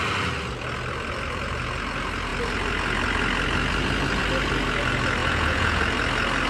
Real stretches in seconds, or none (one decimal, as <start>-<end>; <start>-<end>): 0.0-5.2; 5.8-6.5